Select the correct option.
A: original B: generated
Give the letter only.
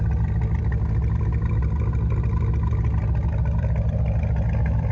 A